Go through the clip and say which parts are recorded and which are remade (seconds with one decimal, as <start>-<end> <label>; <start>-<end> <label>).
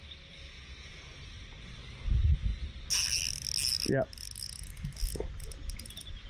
0.0-6.3 recorded